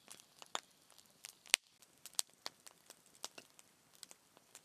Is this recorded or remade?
remade